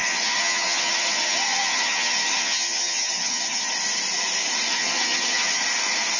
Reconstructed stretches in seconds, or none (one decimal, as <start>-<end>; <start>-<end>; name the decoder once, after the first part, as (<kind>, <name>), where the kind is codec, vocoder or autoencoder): 0.0-3.7 (vocoder, HiFi-GAN); 4.7-5.6